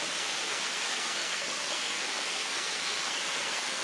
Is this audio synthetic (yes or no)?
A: yes